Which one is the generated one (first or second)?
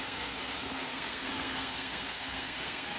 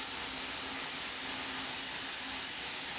first